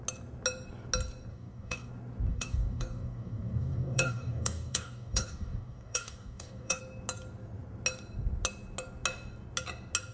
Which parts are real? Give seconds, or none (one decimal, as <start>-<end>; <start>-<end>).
0.0-1.3; 1.9-2.3; 6.8-10.1